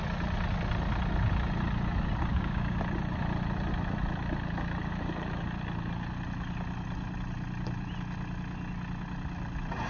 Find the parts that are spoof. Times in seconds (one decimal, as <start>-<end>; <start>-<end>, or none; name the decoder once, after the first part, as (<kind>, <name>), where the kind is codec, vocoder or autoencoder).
2.3-2.8 (codec, DAC)